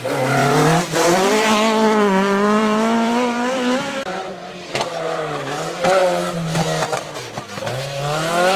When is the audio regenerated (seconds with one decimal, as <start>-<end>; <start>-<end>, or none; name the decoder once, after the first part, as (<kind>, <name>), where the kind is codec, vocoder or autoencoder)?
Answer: 0.4-5.4 (vocoder, BigVGAN v2)